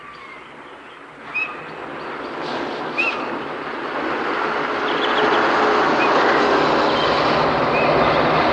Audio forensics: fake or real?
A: real